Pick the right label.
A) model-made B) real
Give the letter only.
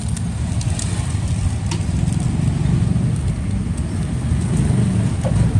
B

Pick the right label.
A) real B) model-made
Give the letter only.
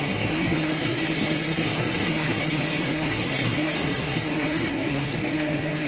B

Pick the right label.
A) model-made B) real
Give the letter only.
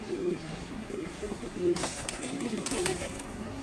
A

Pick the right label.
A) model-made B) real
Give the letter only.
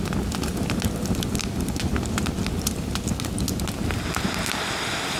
B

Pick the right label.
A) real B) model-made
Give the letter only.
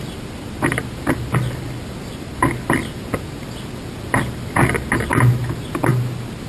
A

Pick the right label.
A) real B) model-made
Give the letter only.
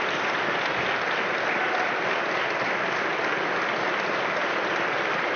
A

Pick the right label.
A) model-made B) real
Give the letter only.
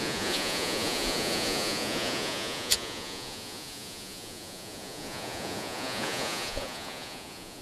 A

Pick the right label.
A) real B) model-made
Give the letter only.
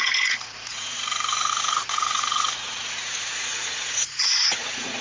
B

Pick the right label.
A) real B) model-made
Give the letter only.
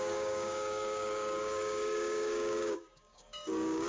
B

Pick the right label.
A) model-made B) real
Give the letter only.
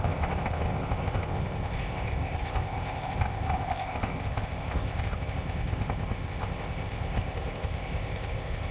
A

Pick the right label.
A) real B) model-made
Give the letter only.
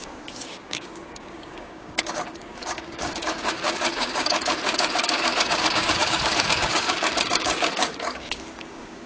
B